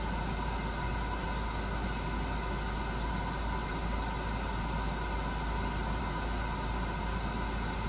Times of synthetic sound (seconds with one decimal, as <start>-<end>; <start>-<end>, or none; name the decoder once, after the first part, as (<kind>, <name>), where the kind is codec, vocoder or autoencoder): none